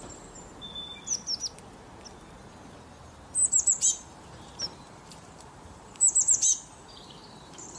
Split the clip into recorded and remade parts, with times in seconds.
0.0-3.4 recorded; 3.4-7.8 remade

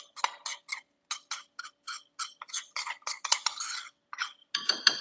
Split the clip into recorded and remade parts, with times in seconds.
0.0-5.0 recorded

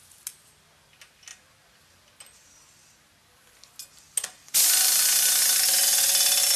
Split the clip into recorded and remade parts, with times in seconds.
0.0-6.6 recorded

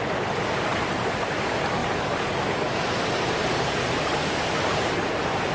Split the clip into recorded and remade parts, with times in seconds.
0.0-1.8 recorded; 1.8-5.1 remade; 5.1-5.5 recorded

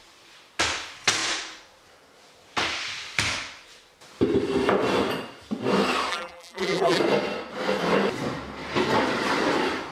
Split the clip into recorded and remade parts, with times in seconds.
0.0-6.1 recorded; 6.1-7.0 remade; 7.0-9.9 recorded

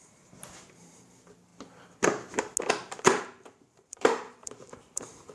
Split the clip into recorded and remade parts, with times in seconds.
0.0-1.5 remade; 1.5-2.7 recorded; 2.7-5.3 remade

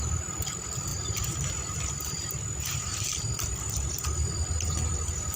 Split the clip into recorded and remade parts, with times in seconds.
0.0-0.9 recorded; 0.9-1.5 remade; 1.5-2.7 recorded; 2.7-3.9 remade; 3.9-5.4 recorded

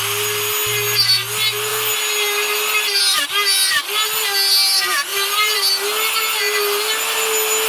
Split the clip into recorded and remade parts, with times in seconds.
0.0-5.1 recorded; 5.1-5.7 remade; 5.7-7.7 recorded